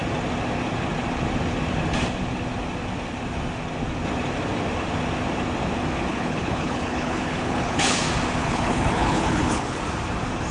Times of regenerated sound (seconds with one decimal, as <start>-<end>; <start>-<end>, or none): 6.1-8.0; 8.4-9.8